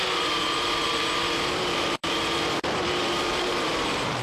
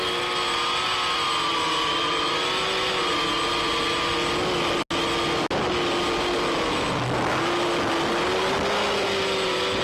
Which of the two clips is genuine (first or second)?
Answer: second